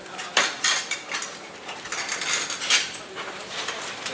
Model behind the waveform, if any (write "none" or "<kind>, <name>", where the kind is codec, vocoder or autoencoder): vocoder, BigVGAN v2